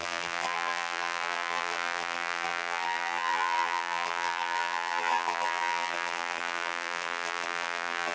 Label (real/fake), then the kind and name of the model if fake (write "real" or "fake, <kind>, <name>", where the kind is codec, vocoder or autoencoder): fake, vocoder, BigVGAN v2